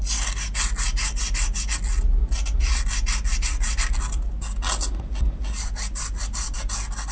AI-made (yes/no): no